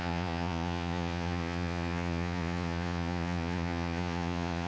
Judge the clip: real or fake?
fake